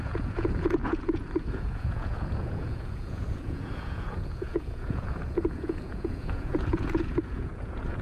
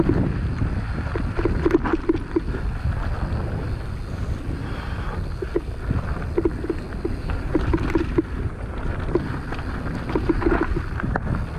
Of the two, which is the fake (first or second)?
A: first